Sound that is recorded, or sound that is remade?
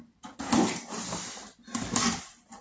recorded